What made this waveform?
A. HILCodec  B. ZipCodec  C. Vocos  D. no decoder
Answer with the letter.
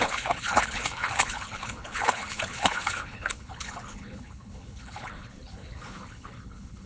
A